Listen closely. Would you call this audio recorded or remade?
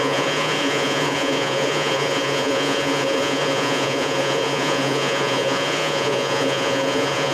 remade